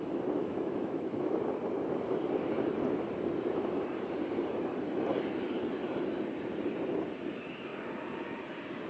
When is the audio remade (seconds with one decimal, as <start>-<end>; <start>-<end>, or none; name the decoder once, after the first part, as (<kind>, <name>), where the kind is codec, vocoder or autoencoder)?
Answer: 0.4-1.4 (autoencoder, DAC-VAE)